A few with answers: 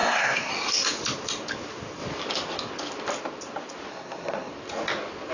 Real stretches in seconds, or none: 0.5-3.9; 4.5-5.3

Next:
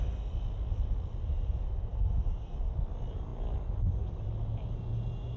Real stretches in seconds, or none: 0.0-5.4